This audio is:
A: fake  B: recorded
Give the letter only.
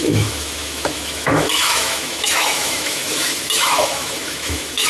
A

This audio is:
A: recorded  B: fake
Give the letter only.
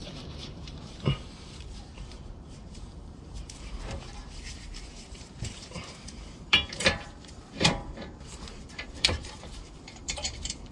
B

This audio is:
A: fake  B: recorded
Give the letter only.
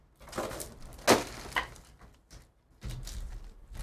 B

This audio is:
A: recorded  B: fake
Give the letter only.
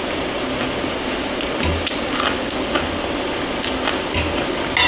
A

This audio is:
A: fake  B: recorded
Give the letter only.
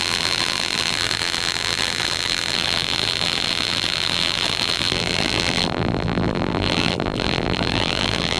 A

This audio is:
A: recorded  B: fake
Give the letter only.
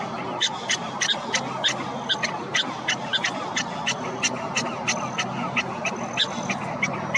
A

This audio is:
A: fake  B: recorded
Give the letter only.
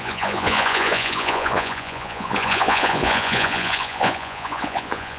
A